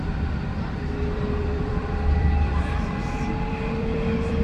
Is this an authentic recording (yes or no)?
no